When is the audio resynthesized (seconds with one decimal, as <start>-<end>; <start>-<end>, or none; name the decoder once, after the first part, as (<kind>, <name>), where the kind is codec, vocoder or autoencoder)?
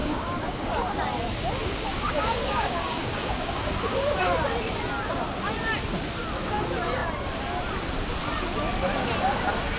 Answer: 0.0-0.7 (codec, DAC); 1.6-4.4